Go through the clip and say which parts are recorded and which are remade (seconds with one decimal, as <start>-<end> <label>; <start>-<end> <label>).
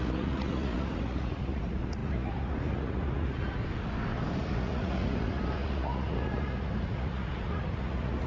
0.0-3.6 remade; 3.6-4.4 recorded; 4.4-8.3 remade